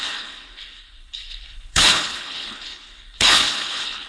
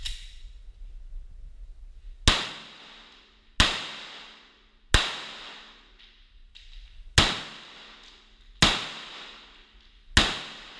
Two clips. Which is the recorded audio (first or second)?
second